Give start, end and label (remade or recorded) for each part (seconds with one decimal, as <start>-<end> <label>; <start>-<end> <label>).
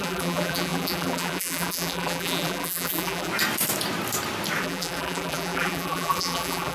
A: 0.0-3.3 remade; 3.3-4.6 recorded; 4.6-6.7 remade